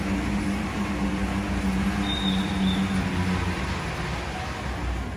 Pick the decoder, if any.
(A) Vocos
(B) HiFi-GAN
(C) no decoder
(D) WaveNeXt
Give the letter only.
C